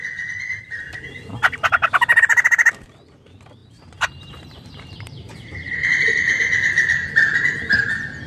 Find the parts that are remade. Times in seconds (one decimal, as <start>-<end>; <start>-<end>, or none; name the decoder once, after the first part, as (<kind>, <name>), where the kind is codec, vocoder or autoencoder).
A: 3.6-5.7 (vocoder, BigVGAN v2)

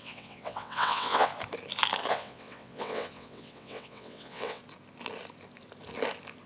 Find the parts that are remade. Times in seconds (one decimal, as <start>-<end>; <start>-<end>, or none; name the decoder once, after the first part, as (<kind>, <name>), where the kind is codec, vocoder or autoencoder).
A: 0.0-1.3 (vocoder, WaveNeXt); 2.1-4.6

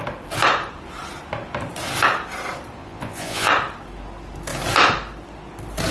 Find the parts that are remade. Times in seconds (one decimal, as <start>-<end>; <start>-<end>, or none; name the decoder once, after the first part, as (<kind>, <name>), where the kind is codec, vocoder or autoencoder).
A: 2.8-3.5 (vocoder, Vocos)

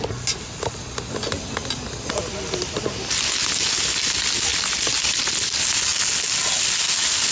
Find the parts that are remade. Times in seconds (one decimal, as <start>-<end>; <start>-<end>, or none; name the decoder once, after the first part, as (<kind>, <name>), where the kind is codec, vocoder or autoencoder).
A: none

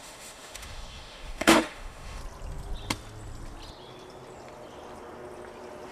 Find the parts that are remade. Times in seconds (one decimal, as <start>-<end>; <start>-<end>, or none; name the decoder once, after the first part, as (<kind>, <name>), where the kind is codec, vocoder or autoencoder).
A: 0.0-2.2 (autoencoder, DAC-VAE)

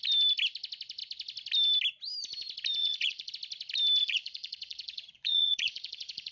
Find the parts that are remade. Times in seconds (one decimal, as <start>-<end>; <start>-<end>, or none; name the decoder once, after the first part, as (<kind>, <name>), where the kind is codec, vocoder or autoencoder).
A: 2.8-3.3 (vocoder, Vocos); 4.0-6.3